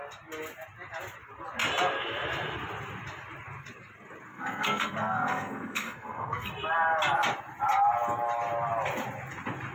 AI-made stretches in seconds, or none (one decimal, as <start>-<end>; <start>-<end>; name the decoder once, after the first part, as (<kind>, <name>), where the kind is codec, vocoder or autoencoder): 4.3-6.5 (codec, SNAC)